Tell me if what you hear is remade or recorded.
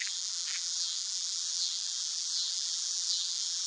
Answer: remade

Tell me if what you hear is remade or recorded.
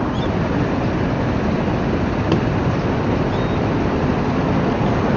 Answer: recorded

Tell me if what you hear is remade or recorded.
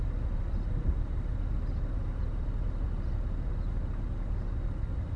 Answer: recorded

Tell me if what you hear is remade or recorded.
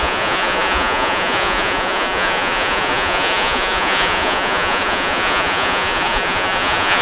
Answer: remade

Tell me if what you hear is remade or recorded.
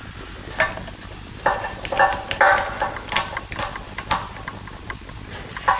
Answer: recorded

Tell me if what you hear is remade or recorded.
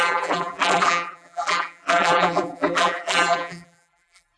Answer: remade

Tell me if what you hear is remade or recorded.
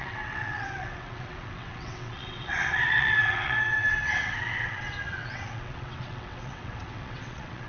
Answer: remade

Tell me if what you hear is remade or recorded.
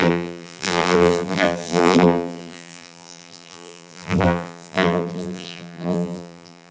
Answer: remade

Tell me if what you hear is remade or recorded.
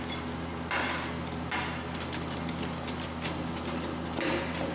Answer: recorded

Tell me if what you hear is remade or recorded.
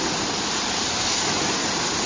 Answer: recorded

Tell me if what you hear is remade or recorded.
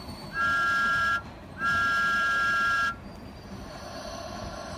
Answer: remade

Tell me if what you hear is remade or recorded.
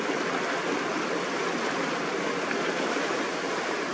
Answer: recorded